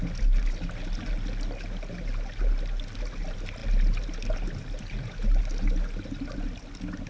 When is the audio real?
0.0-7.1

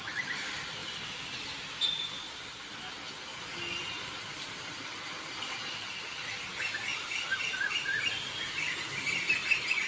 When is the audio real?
0.0-0.8; 2.6-3.3; 6.3-9.9

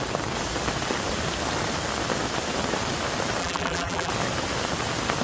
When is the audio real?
0.0-3.4; 4.1-5.2